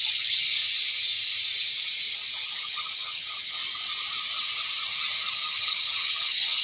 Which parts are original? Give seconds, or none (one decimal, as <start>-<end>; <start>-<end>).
0.6-2.5; 3.6-5.3